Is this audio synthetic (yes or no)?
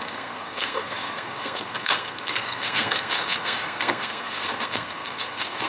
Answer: yes